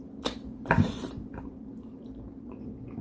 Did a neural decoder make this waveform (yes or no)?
yes